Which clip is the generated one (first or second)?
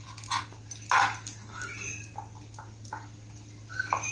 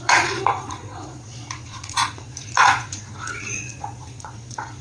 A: second